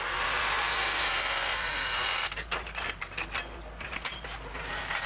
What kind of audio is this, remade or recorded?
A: recorded